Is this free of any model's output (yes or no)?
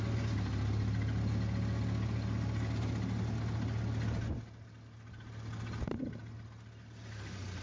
yes